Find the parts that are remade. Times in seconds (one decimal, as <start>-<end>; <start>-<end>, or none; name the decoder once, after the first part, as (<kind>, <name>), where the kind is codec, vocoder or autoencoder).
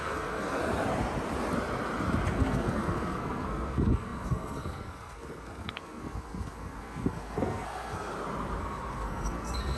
0.0-0.6 (codec, SNAC); 2.3-8.1; 8.6-9.8